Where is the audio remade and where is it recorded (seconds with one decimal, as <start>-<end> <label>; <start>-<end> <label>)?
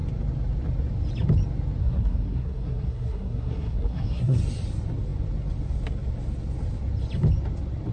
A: 0.0-1.8 recorded; 1.8-4.4 remade; 4.4-7.9 recorded